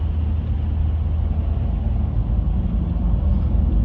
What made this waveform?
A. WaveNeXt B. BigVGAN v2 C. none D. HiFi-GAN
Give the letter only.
C